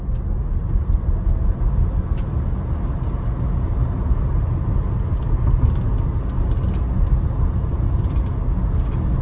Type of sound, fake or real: real